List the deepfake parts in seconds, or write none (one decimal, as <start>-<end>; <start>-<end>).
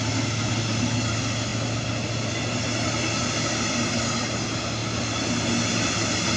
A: none